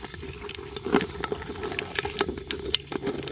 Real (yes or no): yes